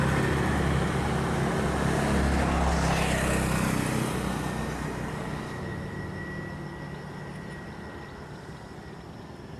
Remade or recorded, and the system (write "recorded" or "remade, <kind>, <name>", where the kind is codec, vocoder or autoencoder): recorded